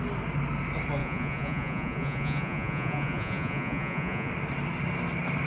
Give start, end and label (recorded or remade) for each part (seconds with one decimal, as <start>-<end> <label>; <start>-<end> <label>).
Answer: 0.0-1.0 recorded; 1.0-4.3 remade; 4.3-5.5 recorded